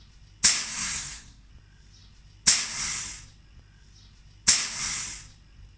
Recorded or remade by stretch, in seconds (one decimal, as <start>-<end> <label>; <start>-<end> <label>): 0.0-0.7 recorded; 0.7-1.5 remade; 1.5-5.8 recorded